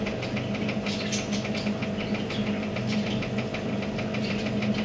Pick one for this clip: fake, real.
real